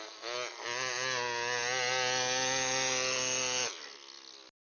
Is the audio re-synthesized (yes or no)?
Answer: no